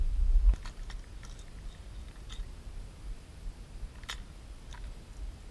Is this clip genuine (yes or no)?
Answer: yes